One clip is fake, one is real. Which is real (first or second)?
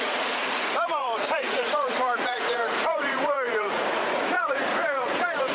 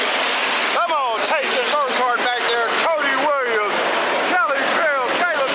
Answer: second